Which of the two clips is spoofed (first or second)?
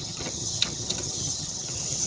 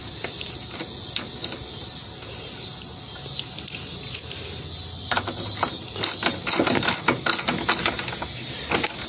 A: first